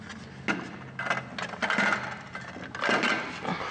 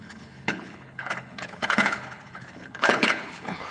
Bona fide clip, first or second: first